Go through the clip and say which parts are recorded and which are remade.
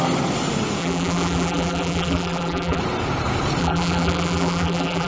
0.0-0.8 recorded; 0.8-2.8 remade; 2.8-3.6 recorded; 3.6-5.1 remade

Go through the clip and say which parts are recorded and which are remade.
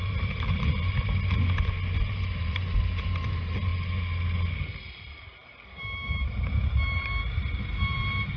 0.0-1.1 remade; 1.1-2.0 recorded; 2.0-3.7 remade; 3.7-4.8 recorded; 4.8-8.4 remade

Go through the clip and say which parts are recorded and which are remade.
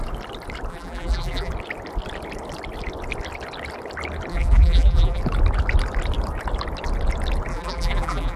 0.0-0.7 recorded; 0.7-1.5 remade; 1.5-4.3 recorded; 4.3-5.2 remade; 5.2-7.5 recorded; 7.5-8.4 remade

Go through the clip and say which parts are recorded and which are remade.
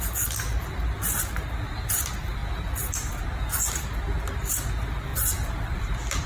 0.0-5.1 recorded; 5.1-5.8 remade; 5.8-6.3 recorded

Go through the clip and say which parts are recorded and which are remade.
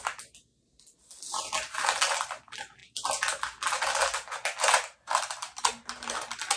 0.0-6.6 recorded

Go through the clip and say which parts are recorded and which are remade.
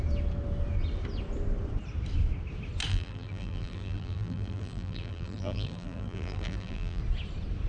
0.0-2.9 recorded; 2.9-7.0 remade; 7.0-7.7 recorded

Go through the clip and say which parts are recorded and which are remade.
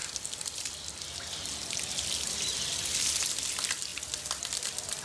0.0-5.0 recorded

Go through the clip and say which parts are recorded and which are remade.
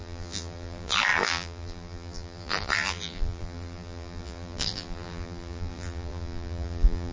0.0-7.1 remade